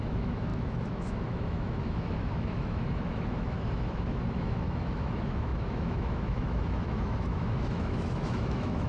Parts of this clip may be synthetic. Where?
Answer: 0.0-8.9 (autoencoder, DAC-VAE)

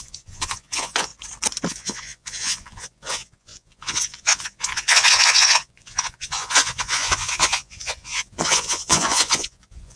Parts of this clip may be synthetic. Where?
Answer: 0.0-1.1 (vocoder, Vocos); 1.7-10.0

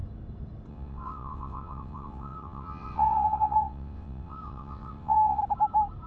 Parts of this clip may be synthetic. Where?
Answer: 0.7-5.4 (vocoder, WaveNeXt)

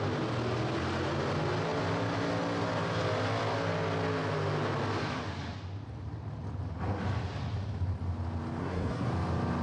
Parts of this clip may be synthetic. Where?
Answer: 8.6-9.1 (codec, SNAC)

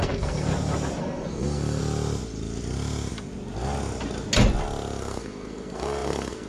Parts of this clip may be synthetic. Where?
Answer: 0.0-0.5 (codec, SNAC); 1.0-1.8; 5.0-6.5

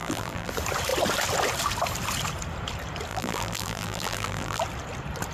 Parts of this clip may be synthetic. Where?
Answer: 0.0-0.5 (vocoder, BigVGAN v2); 3.1-4.6

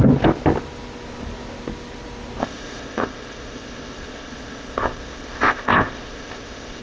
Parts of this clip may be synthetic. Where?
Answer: 2.4-6.8 (codec, ZipCodec)